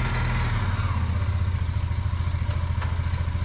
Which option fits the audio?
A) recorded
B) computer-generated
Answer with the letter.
A